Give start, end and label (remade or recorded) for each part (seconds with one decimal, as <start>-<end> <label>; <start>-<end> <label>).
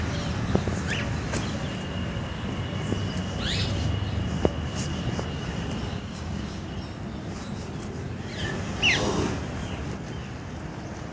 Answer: 0.0-5.9 recorded; 5.9-6.7 remade; 6.7-11.1 recorded